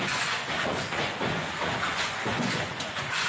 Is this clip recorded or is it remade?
remade